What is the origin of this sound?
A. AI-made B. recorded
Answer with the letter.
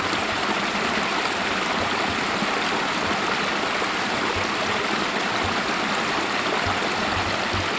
B